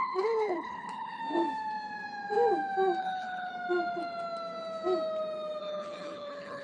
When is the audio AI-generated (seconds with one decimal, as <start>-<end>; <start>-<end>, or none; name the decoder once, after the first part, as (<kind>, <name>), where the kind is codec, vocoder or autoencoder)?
0.0-1.2 (codec, HILCodec); 3.0-3.5; 5.6-6.6